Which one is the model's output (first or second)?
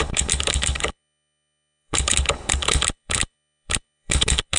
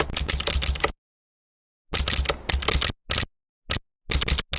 first